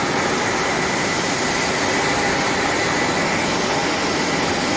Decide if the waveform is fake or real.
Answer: real